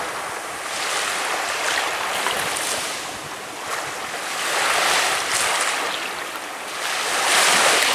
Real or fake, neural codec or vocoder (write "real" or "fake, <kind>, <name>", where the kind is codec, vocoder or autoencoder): real